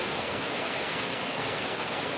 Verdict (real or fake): fake